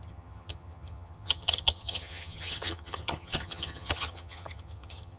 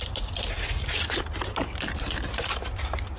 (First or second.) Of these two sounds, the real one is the second